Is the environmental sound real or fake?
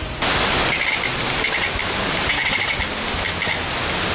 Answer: real